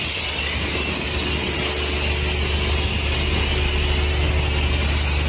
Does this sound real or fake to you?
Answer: real